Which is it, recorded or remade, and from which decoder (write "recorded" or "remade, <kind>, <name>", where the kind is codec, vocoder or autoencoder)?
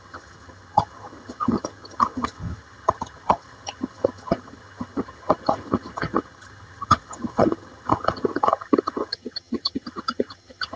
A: remade, vocoder, HiFi-GAN